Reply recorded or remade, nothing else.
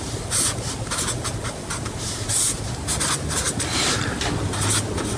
recorded